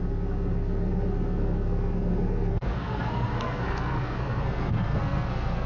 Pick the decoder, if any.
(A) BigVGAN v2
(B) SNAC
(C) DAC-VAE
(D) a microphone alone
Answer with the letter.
B